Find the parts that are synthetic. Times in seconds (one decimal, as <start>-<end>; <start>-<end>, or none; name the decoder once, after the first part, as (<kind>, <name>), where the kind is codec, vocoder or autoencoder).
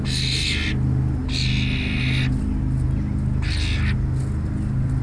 none